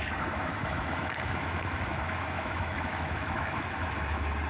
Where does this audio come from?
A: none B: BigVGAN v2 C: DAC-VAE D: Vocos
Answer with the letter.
C